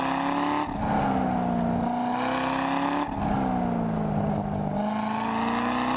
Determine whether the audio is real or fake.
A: real